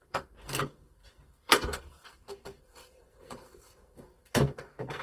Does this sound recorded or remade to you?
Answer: remade